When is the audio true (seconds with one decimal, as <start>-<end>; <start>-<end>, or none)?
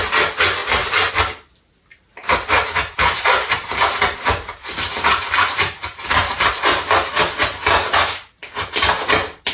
0.0-2.2; 2.9-3.4; 6.5-7.4; 8.6-9.5